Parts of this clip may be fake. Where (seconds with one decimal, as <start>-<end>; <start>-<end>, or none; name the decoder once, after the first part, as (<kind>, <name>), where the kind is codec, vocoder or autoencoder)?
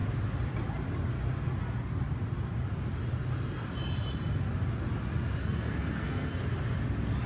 5.4-6.4 (codec, SNAC)